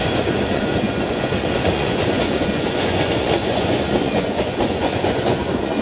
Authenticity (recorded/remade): remade